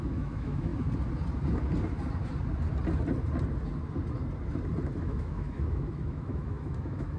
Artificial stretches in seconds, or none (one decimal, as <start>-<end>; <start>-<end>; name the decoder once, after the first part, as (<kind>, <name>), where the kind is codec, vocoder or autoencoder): 0.0-0.7 (autoencoder, DAC-VAE); 5.0-7.2